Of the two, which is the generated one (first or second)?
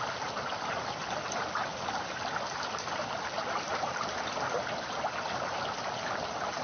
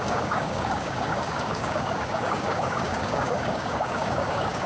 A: second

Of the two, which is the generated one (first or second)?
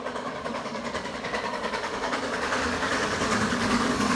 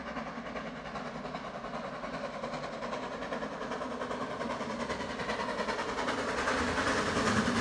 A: first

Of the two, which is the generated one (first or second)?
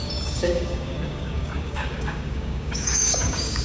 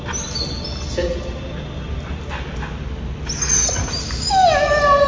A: first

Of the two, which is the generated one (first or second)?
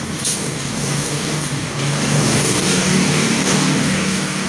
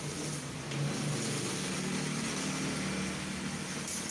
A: first